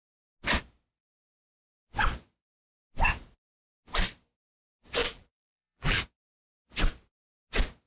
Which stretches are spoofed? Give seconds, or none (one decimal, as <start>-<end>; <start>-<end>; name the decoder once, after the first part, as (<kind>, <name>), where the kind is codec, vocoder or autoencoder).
5.0-6.0 (vocoder, BigVGAN v2)